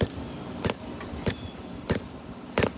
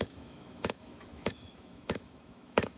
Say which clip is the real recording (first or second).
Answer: first